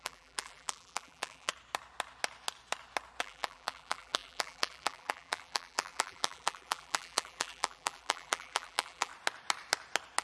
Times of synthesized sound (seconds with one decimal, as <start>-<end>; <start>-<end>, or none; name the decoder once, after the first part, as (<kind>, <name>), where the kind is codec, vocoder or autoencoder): 0.0-1.5 (vocoder, BigVGAN v2); 3.2-9.1